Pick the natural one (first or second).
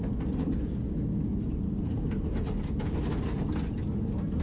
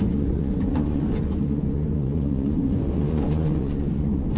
first